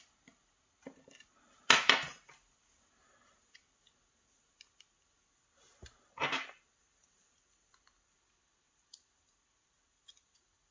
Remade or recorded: recorded